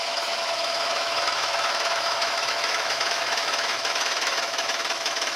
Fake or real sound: fake